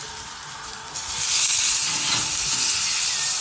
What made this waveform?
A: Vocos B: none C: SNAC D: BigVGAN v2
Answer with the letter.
B